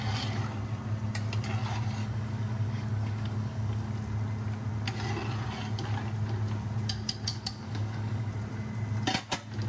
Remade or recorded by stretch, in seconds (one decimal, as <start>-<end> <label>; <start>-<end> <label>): 0.0-2.0 recorded; 2.0-3.9 remade; 3.9-7.3 recorded; 7.3-8.3 remade; 8.3-9.7 recorded